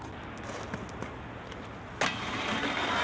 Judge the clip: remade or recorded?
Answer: recorded